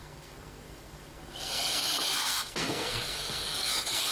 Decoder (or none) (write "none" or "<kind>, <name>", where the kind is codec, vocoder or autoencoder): codec, SNAC